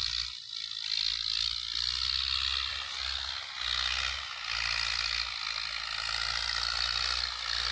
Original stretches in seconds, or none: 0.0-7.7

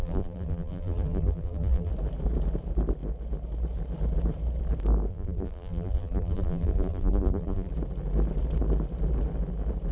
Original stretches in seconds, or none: 1.9-5.1; 7.7-9.9

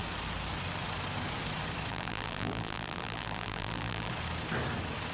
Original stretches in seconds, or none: 0.0-1.9; 4.1-5.1

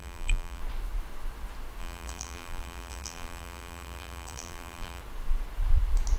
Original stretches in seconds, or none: 0.6-1.8; 5.0-6.2

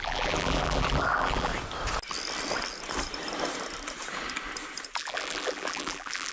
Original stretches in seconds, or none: 1.5-5.0

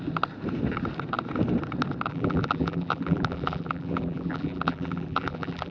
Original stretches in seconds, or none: 0.0-2.1

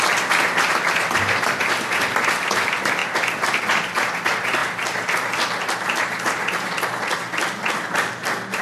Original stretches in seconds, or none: 0.0-8.6